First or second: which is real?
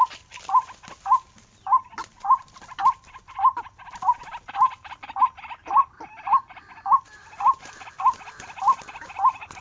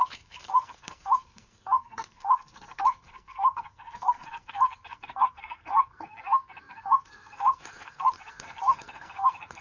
first